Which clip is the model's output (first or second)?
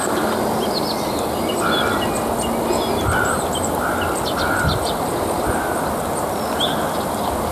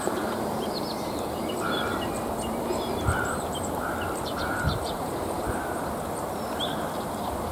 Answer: second